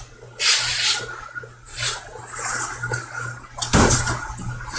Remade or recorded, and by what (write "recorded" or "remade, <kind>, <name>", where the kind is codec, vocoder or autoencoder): recorded